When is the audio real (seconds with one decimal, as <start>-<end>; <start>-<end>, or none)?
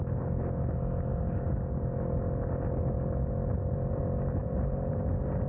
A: 0.0-4.4; 5.1-5.5